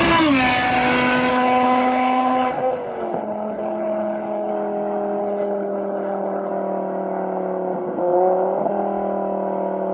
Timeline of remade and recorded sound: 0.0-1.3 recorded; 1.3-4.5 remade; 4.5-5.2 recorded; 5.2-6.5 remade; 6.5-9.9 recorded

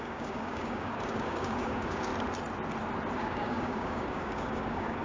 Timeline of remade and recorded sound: 0.0-2.1 remade; 2.1-3.2 recorded; 3.2-5.0 remade